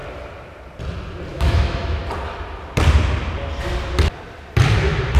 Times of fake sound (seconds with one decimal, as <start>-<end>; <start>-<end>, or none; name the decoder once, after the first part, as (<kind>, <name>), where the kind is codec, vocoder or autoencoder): 1.3-2.0 (autoencoder, DAC-VAE)